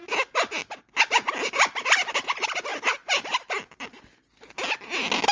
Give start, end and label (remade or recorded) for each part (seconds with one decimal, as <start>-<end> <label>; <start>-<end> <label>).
0.0-2.7 recorded; 2.7-4.2 remade; 4.2-5.3 recorded